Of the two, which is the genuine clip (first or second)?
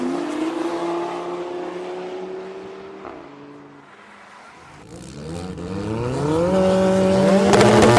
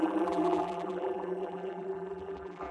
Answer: first